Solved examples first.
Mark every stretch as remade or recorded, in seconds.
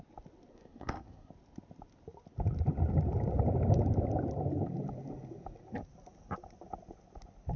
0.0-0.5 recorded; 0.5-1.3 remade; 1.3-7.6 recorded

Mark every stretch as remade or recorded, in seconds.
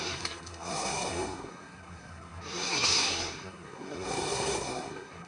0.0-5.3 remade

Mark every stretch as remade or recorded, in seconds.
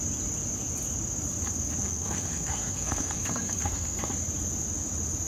0.0-1.8 recorded; 1.8-4.1 remade; 4.1-5.3 recorded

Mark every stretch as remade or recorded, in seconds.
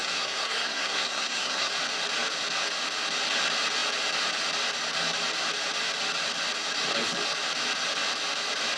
0.0-1.7 remade; 1.7-8.8 recorded